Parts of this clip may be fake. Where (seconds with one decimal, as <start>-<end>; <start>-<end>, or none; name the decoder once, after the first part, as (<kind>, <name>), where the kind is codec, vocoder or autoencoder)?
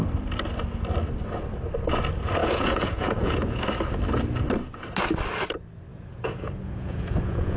2.4-3.6 (vocoder, Vocos); 5.9-7.6